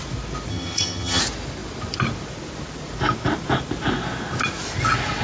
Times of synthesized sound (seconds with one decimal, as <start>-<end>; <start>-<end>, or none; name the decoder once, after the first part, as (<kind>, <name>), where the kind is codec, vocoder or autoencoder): 0.5-1.2 (vocoder, HiFi-GAN)

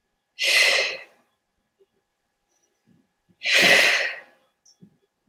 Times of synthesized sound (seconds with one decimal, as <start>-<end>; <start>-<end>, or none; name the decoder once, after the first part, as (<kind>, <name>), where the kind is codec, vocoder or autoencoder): 0.0-1.6 (vocoder, BigVGAN v2); 2.1-3.6

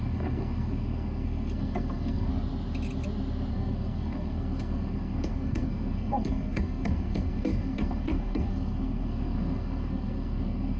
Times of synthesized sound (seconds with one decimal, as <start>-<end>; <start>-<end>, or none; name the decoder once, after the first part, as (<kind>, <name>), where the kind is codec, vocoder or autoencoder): 0.0-2.3 (codec, SNAC); 3.5-10.8